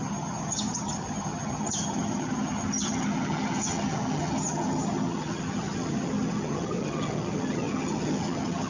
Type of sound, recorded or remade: remade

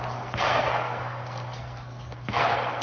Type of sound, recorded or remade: remade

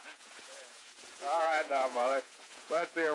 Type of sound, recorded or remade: remade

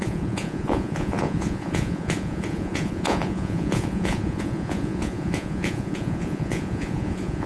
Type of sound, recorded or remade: remade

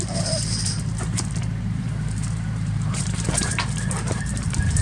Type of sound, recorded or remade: remade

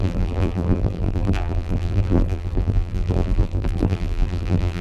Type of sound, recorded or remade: remade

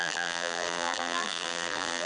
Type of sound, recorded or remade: remade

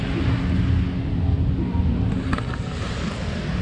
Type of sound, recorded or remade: recorded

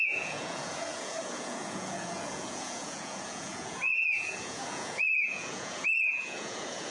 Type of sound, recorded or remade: remade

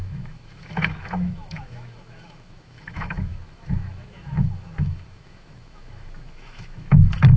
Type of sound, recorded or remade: remade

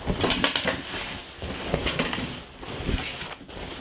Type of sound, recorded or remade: recorded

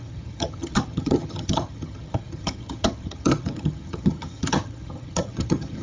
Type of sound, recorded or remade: remade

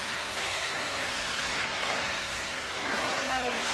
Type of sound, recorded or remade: remade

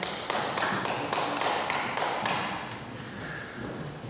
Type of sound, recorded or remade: recorded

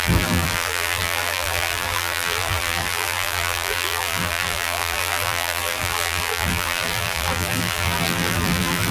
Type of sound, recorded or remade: remade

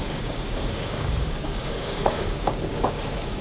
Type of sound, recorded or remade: remade